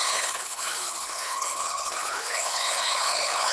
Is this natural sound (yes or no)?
no